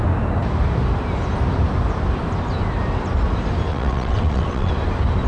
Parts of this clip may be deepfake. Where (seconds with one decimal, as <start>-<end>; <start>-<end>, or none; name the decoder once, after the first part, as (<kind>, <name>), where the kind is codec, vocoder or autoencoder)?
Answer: 3.7-4.7 (vocoder, WaveNeXt)